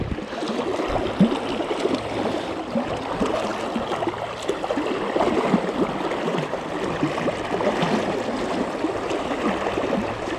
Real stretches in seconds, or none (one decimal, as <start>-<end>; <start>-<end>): 0.0-10.4